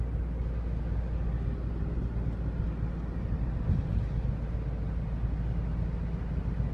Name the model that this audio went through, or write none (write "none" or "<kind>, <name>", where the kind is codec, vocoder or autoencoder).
none